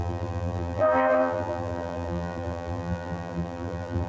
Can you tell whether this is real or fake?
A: fake